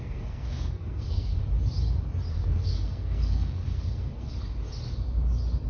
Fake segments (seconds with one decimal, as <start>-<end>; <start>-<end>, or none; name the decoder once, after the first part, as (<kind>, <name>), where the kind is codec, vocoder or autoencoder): 0.0-1.4 (codec, SNAC); 2.3-4.3